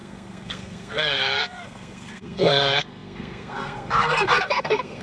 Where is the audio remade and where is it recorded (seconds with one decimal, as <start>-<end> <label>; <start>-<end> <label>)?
0.0-5.0 remade